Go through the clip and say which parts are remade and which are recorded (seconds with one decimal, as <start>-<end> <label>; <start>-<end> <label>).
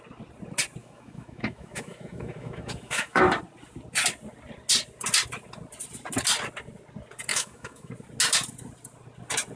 0.0-0.8 recorded; 0.8-3.2 remade; 3.2-7.3 recorded; 7.3-7.9 remade; 7.9-9.6 recorded